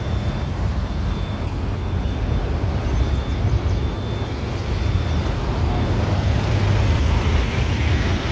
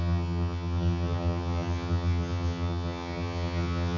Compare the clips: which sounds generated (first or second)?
second